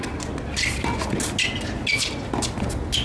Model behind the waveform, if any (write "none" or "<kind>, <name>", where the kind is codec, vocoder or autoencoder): none